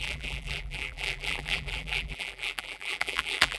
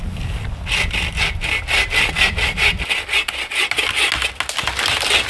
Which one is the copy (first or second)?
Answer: first